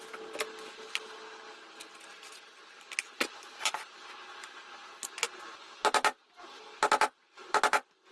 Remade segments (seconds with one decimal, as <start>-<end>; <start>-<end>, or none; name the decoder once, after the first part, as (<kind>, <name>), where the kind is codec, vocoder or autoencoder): none